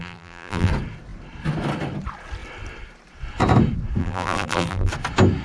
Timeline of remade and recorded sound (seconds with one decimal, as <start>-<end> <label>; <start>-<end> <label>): 0.0-0.7 remade; 0.7-4.0 recorded; 4.0-4.9 remade; 4.9-5.4 recorded

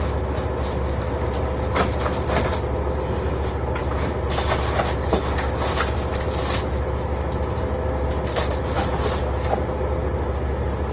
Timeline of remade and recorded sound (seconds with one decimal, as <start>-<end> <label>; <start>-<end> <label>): 0.0-10.9 recorded

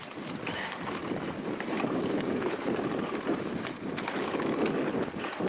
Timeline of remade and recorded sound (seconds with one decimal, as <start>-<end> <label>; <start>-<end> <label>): 0.0-1.0 recorded; 1.0-4.2 remade; 4.2-5.5 recorded

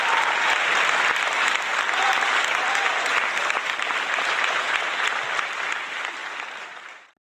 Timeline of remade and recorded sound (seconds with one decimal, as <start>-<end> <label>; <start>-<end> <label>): 0.0-7.2 recorded

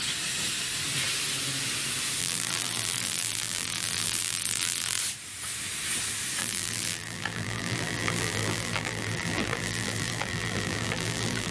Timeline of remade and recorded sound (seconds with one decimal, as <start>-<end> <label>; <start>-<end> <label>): 0.0-2.2 recorded; 2.2-5.0 remade; 5.0-6.4 recorded; 6.4-11.5 remade

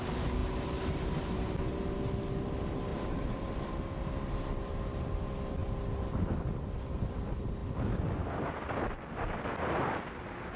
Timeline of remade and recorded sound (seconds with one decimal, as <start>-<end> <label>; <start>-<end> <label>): 0.0-2.9 recorded; 2.9-3.7 remade; 3.7-10.6 recorded

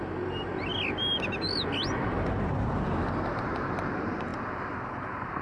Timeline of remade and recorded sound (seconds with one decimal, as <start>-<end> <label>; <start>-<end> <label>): 0.0-0.7 remade; 0.7-2.0 recorded; 2.0-5.4 remade

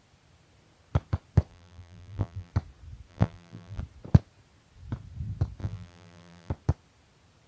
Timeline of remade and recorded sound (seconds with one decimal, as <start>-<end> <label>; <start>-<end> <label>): 0.0-1.5 recorded; 1.5-2.5 remade; 2.5-3.1 recorded; 3.1-3.8 remade; 3.8-5.6 recorded; 5.6-6.5 remade; 6.5-7.5 recorded